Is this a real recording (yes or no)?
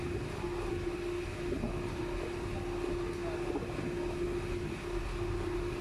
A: yes